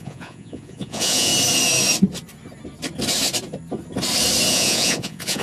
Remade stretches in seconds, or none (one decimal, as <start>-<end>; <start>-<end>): 0.0-1.3; 4.5-5.4